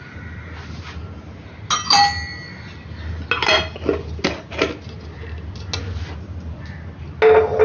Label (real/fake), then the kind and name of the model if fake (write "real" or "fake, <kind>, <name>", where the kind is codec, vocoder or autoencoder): real